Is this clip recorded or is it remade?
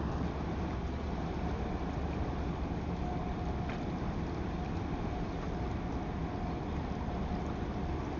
recorded